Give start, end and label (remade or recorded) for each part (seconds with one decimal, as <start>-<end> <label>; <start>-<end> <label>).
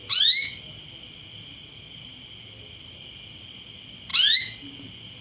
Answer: 0.0-5.2 recorded